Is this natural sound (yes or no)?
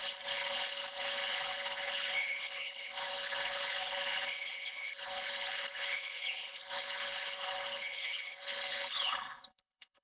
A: no